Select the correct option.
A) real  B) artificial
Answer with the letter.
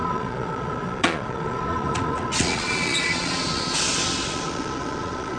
B